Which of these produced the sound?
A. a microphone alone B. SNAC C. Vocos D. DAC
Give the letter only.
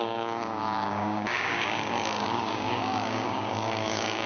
D